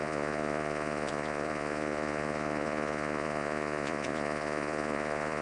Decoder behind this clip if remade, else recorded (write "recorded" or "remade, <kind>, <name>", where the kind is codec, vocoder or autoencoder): remade, vocoder, Vocos